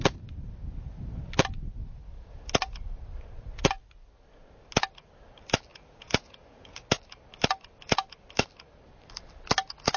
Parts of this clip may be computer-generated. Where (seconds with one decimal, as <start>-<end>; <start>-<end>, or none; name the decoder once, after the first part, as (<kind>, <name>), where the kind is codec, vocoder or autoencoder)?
5.7-6.8 (vocoder, Vocos)

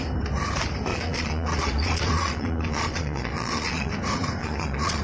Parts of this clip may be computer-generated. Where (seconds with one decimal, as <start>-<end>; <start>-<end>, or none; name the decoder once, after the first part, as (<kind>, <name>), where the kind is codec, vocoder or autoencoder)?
0.9-3.9 (vocoder, Vocos); 4.4-5.0

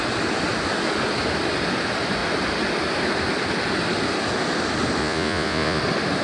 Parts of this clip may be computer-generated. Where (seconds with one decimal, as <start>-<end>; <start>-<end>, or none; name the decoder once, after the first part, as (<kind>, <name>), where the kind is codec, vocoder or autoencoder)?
5.0-5.8 (vocoder, Vocos)

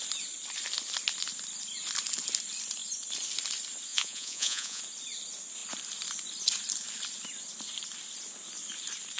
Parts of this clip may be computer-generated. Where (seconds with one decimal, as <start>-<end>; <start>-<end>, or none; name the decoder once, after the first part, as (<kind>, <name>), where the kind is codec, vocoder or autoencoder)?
3.9-4.8 (vocoder, Vocos)

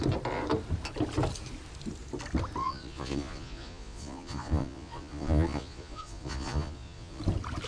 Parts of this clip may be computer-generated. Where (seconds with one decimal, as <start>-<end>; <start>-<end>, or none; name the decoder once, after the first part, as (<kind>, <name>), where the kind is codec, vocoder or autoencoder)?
2.6-7.2 (vocoder, Vocos)

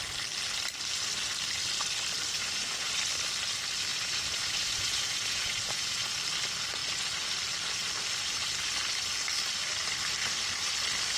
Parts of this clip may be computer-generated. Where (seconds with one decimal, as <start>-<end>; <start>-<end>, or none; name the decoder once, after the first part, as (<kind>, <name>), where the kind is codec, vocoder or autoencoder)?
2.3-2.9 (vocoder, Vocos); 3.9-5.9

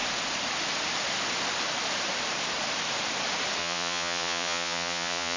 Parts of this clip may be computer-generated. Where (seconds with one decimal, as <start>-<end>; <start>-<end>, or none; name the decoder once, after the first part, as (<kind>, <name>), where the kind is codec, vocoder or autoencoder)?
3.6-5.4 (vocoder, Vocos)